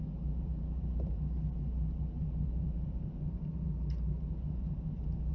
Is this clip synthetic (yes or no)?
yes